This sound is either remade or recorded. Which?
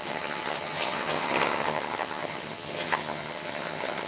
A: remade